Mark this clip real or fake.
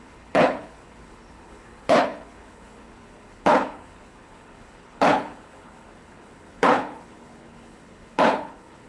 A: fake